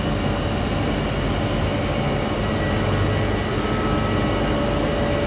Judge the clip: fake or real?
real